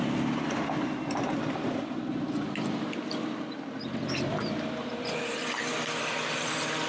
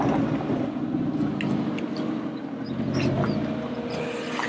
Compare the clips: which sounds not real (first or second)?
first